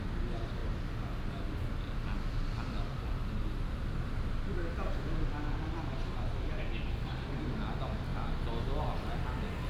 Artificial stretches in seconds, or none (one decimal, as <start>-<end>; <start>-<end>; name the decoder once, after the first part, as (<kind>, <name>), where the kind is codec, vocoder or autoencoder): none